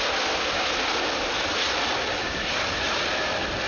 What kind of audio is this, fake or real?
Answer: fake